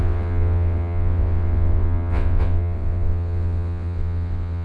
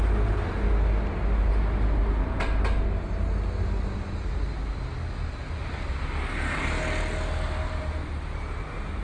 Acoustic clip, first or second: second